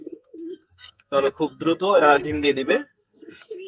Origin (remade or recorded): remade